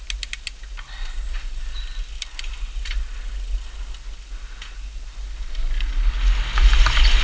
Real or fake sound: real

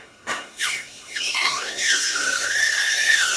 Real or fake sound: fake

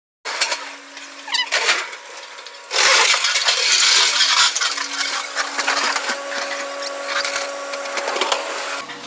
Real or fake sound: real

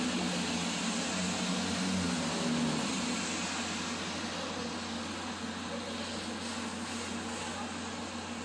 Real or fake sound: real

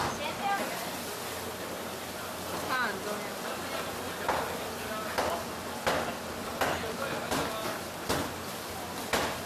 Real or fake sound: real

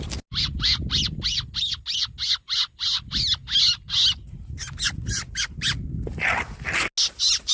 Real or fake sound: real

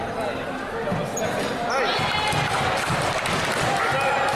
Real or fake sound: real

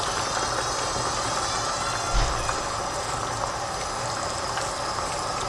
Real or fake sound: real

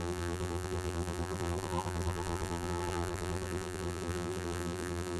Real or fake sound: fake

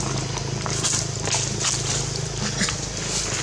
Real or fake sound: real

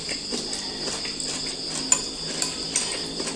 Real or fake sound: real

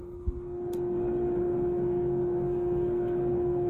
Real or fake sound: fake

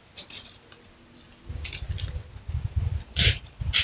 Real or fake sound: real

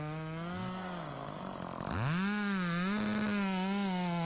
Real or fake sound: real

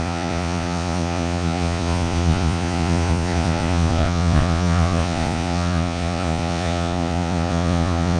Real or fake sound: fake